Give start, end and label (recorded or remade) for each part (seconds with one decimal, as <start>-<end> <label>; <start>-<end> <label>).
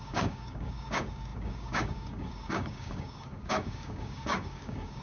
0.0-5.0 remade